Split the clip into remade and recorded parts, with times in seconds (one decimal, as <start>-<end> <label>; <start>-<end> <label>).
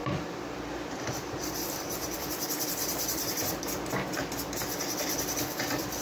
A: 0.0-3.6 remade; 3.6-6.0 recorded